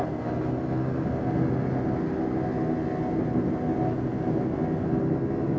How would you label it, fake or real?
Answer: real